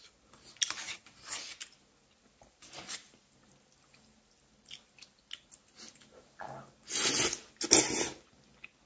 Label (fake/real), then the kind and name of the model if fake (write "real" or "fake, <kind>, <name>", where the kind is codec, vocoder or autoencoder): real